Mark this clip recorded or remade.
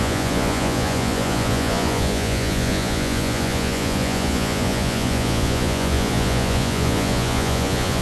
remade